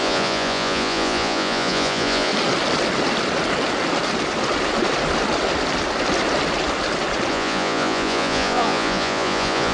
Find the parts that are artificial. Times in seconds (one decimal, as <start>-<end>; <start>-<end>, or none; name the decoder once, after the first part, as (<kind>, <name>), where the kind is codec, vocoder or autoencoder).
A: 0.0-2.3 (vocoder, Vocos); 7.3-9.7